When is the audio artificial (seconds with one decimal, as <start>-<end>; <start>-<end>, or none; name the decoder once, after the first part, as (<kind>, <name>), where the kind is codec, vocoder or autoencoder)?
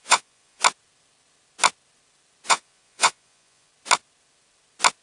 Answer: 0.0-0.6 (vocoder, Vocos); 2.5-3.7